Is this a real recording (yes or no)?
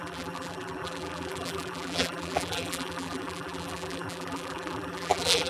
no